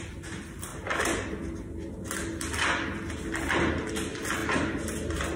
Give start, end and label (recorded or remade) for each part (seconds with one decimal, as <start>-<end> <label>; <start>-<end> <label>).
0.0-0.7 remade; 0.7-3.9 recorded; 3.9-5.4 remade

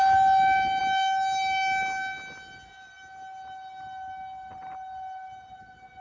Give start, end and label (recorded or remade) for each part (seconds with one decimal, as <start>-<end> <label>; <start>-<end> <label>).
0.0-6.0 recorded

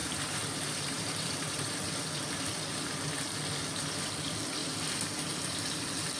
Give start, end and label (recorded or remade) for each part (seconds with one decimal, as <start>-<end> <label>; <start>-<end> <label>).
0.0-1.7 remade; 1.7-4.6 recorded; 4.6-5.6 remade; 5.6-6.2 recorded

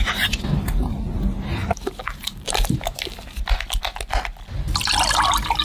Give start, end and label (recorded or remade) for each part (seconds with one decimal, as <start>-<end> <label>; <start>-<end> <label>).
0.0-1.6 recorded; 1.6-2.8 remade; 2.8-5.6 recorded